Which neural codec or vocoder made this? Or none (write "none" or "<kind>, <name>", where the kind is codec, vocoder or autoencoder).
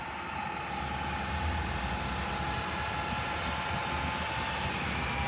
none